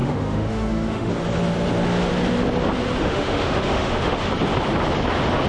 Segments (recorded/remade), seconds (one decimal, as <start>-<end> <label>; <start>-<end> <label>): 0.0-1.1 remade; 1.1-3.0 recorded; 3.0-4.3 remade; 4.3-5.5 recorded